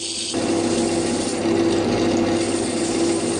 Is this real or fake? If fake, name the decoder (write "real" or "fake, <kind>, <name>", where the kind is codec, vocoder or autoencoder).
real